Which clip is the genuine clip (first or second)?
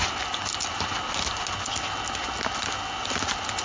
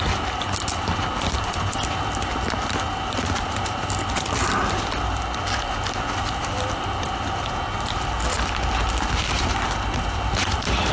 first